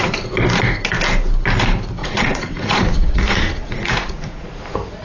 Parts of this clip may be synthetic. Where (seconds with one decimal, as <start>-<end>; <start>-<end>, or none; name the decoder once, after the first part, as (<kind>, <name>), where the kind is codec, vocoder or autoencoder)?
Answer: 2.0-4.5 (vocoder, Vocos)